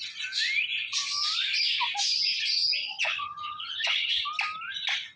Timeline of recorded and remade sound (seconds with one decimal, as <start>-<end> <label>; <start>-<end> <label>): 0.0-2.8 recorded; 2.8-4.1 remade; 4.1-5.2 recorded